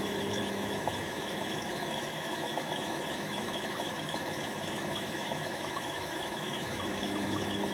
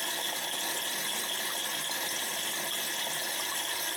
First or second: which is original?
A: second